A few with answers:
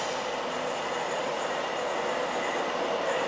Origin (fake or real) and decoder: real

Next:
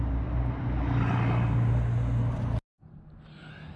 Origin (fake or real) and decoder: real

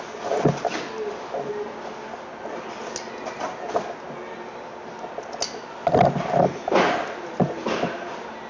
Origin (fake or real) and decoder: real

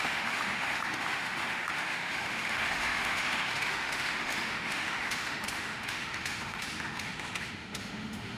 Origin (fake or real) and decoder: fake, autoencoder, DAC-VAE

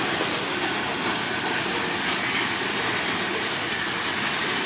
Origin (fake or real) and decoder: real